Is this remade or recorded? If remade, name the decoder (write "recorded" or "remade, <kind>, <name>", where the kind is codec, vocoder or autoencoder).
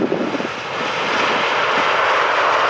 recorded